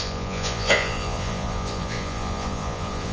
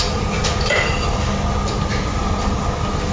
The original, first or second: second